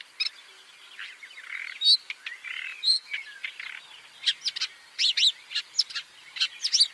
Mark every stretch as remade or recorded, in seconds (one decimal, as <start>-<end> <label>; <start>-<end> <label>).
0.0-6.9 recorded